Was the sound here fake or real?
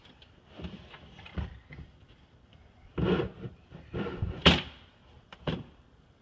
fake